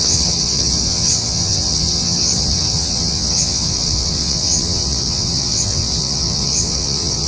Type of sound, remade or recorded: remade